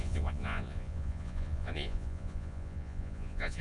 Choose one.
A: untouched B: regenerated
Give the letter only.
B